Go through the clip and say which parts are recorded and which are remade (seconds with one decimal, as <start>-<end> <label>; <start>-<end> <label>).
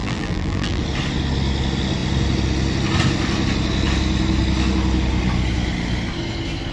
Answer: 0.0-0.8 remade; 0.8-6.7 recorded